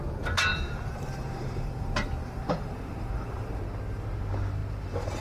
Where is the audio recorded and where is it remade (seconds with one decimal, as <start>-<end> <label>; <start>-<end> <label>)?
0.0-0.5 recorded; 0.5-3.6 remade; 3.6-5.2 recorded